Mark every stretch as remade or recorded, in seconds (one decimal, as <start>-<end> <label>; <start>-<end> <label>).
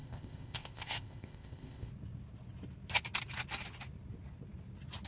0.0-1.9 remade; 1.9-5.1 recorded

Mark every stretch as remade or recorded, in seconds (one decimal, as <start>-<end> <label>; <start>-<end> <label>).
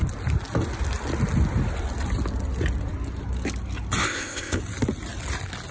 0.0-4.0 recorded; 4.0-4.6 remade; 4.6-5.7 recorded